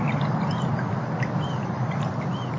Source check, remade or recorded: remade